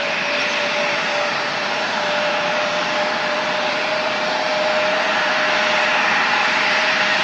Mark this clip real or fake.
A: fake